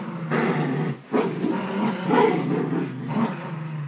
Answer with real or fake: real